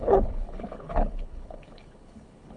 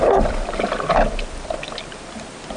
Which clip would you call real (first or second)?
second